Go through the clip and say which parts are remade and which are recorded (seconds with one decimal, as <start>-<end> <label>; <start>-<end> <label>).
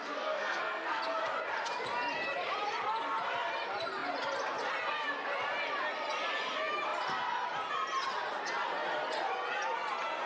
0.0-1.0 remade; 1.0-10.3 recorded